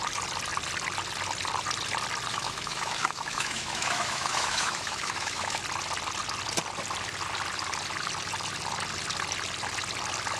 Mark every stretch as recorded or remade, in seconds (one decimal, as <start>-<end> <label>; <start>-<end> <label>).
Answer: 0.0-2.3 recorded; 2.3-5.6 remade; 5.6-10.4 recorded